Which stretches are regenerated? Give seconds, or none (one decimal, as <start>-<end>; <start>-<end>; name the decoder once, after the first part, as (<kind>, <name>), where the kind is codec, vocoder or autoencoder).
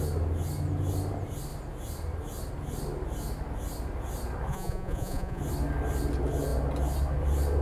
4.5-5.4 (vocoder, Vocos)